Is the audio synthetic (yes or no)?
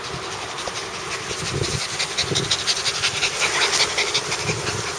no